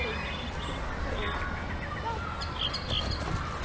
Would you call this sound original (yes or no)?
yes